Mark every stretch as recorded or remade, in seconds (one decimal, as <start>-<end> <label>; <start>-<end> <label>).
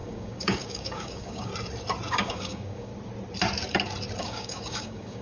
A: 0.0-1.5 remade; 1.5-2.1 recorded; 2.1-2.9 remade; 2.9-4.2 recorded; 4.2-5.2 remade